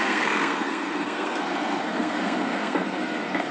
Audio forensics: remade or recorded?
remade